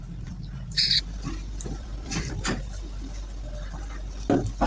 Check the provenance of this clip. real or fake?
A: fake